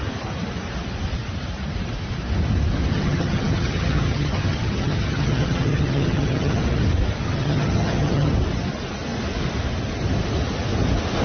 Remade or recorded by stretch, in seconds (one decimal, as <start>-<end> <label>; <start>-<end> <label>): 0.0-2.9 recorded; 2.9-6.6 remade; 6.6-7.2 recorded; 7.2-8.3 remade; 8.3-11.2 recorded